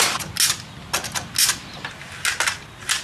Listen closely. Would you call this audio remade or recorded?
recorded